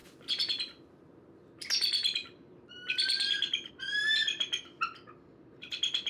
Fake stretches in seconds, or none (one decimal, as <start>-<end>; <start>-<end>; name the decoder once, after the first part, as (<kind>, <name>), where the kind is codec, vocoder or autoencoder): none